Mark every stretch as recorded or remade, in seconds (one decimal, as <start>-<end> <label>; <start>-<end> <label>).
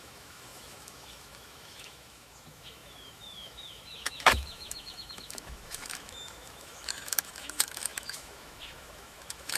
0.0-9.6 remade